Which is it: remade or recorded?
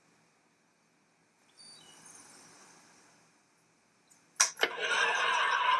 recorded